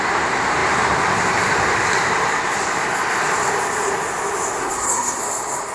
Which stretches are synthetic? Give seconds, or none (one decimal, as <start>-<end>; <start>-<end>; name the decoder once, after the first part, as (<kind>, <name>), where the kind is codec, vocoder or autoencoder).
4.6-5.2 (codec, SNAC)